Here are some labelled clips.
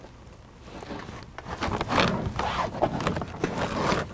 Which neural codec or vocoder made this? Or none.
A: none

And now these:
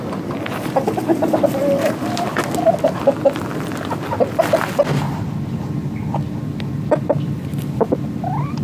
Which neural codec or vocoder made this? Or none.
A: none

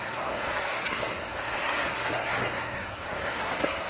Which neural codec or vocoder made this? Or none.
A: codec, SNAC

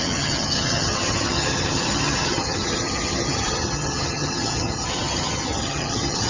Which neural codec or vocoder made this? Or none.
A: vocoder, HiFi-GAN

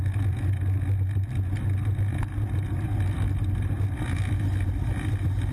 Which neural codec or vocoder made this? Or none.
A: none